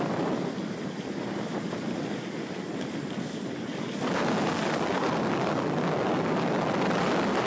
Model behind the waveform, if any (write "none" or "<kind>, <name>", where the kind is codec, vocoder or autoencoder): none